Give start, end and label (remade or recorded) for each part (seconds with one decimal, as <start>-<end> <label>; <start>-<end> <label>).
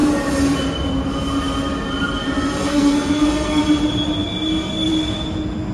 0.0-2.6 recorded; 2.6-3.6 remade; 3.6-5.7 recorded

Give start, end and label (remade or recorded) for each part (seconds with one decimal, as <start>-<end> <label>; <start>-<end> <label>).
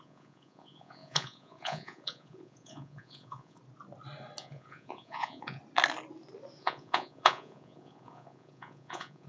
0.0-3.6 remade; 3.6-4.4 recorded; 4.4-5.6 remade; 5.6-6.6 recorded; 6.6-9.3 remade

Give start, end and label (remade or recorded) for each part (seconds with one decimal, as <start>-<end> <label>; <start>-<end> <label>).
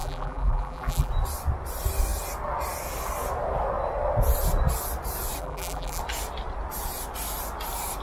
0.0-1.1 remade; 1.1-5.4 recorded; 5.4-6.0 remade; 6.0-8.0 recorded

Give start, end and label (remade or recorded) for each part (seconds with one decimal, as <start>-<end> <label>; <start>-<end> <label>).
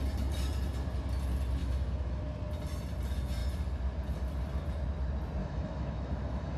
0.0-1.6 recorded; 1.6-2.2 remade; 2.2-5.4 recorded; 5.4-6.6 remade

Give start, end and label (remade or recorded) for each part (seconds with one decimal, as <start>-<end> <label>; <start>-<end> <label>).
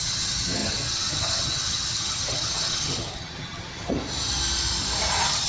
0.0-4.0 remade; 4.0-5.1 recorded; 5.1-5.5 remade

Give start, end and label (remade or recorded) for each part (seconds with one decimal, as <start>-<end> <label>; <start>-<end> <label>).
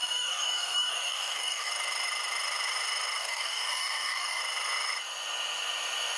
0.0-1.7 remade; 1.7-3.2 recorded; 3.2-4.4 remade; 4.4-6.2 recorded